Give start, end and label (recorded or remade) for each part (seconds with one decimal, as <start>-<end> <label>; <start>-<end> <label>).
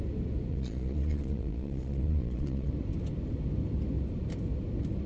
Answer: 0.0-0.5 recorded; 0.5-2.7 remade; 2.7-5.1 recorded